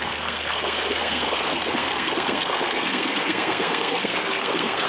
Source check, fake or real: fake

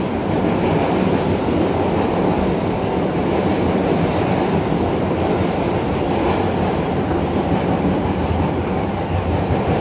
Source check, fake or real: real